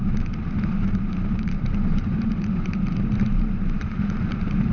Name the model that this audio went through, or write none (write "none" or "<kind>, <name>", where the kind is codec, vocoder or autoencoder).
vocoder, BigVGAN v2